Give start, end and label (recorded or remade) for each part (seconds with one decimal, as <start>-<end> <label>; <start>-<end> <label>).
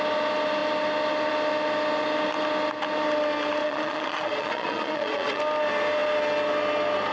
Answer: 0.0-3.6 recorded; 3.6-5.4 remade; 5.4-7.1 recorded